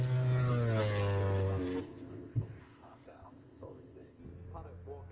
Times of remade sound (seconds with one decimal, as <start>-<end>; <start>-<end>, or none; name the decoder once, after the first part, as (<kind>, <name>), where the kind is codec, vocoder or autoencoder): 1.8-4.2 (codec, ZipCodec)